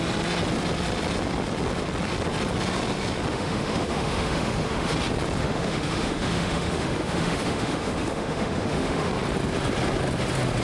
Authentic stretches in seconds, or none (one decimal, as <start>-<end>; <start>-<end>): 0.0-3.3; 4.9-5.4; 9.1-10.6